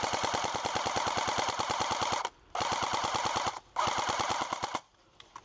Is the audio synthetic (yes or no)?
no